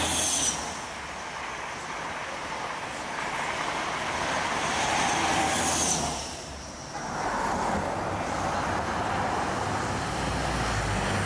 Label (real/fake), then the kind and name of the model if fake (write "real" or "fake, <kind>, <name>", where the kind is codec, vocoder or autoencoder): real